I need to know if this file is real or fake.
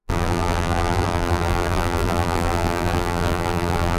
fake